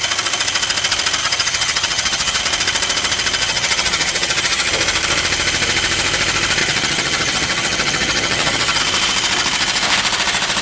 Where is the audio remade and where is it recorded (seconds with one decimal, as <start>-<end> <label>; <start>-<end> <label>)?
0.0-1.2 recorded; 1.2-2.4 remade; 2.4-3.4 recorded; 3.4-4.7 remade; 4.7-6.6 recorded; 6.6-8.8 remade; 8.8-10.6 recorded